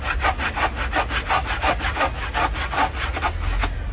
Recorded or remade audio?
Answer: recorded